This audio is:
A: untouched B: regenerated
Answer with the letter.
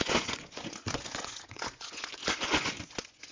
B